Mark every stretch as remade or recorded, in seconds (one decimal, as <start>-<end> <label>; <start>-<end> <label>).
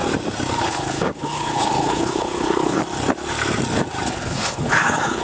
0.0-0.6 recorded; 0.6-2.8 remade; 2.8-4.1 recorded; 4.1-5.2 remade